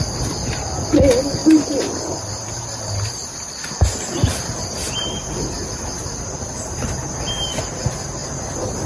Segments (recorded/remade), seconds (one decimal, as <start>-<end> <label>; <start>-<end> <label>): 0.0-0.4 recorded; 0.4-0.9 remade; 0.9-1.4 recorded; 1.4-3.7 remade; 3.7-8.9 recorded